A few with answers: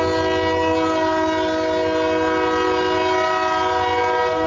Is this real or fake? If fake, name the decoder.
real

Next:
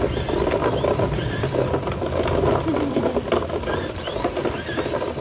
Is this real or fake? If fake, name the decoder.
real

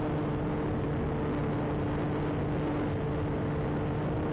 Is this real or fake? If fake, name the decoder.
real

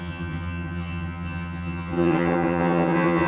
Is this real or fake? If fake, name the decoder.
fake, vocoder, HiFi-GAN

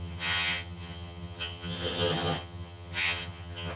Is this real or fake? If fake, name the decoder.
fake, vocoder, HiFi-GAN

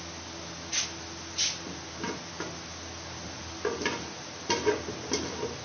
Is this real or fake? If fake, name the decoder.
real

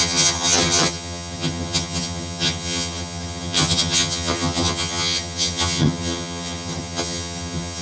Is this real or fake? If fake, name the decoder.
fake, vocoder, HiFi-GAN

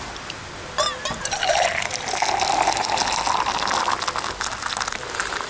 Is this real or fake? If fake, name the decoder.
real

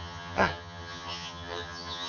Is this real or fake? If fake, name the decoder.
fake, vocoder, HiFi-GAN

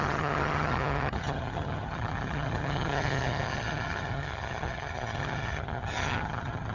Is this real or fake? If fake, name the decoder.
fake, vocoder, HiFi-GAN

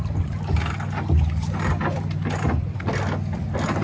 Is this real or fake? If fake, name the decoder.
real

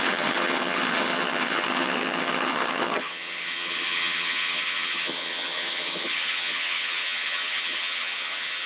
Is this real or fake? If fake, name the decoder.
fake, vocoder, HiFi-GAN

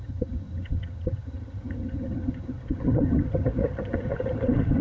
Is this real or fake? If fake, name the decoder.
fake, vocoder, HiFi-GAN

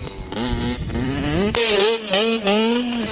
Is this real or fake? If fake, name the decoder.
real